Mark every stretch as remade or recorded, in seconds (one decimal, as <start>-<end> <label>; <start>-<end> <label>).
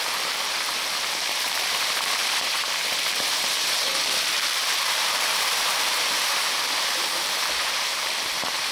0.0-8.7 remade